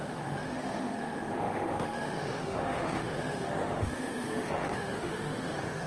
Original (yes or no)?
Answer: no